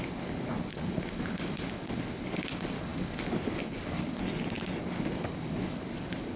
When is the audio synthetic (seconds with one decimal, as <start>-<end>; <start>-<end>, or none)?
0.0-4.2; 4.8-6.4

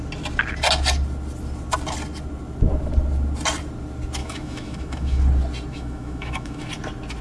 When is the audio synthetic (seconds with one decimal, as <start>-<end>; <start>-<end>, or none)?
4.2-5.2; 5.7-6.7

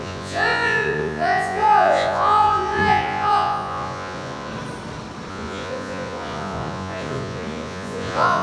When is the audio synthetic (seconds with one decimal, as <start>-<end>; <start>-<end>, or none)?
0.0-4.5; 5.3-8.4

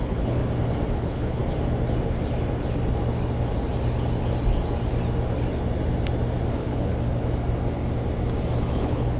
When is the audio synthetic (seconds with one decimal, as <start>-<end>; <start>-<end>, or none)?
0.0-0.4; 0.9-1.4; 6.5-6.9; 8.7-9.2

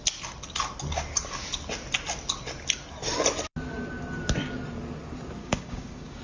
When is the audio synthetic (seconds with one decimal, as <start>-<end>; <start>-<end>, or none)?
5.4-6.2

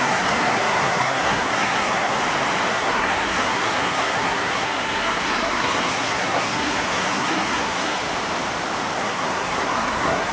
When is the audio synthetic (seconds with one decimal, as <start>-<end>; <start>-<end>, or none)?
0.0-2.2; 2.7-8.0; 9.0-10.3